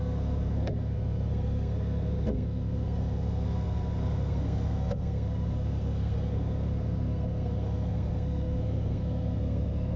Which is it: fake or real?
fake